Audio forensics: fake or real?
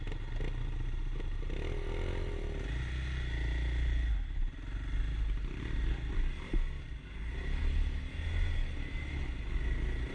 real